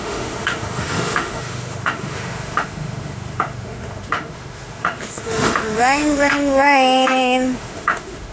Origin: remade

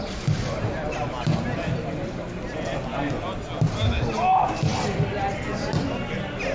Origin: recorded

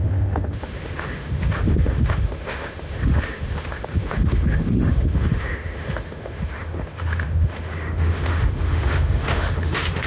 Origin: remade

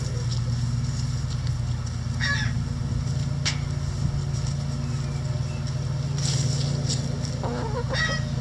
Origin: recorded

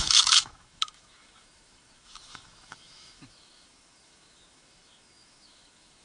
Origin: remade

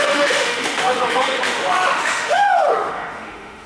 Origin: remade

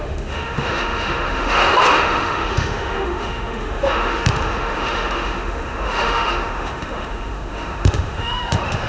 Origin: remade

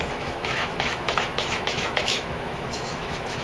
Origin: remade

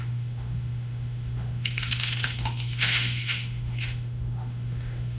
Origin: remade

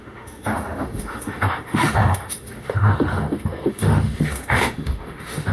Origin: remade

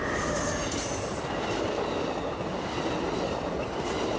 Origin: recorded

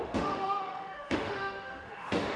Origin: remade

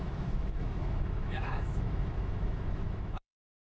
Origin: remade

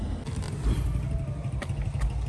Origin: recorded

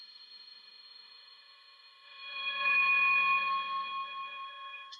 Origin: remade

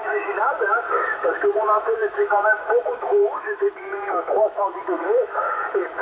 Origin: remade